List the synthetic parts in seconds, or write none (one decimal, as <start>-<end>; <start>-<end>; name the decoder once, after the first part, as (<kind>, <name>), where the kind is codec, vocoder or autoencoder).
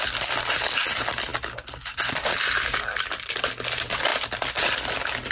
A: none